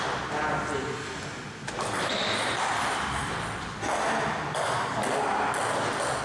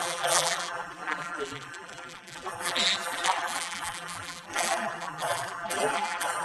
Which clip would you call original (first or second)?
first